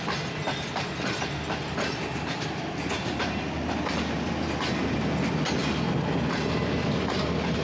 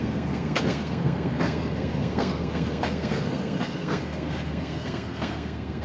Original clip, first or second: first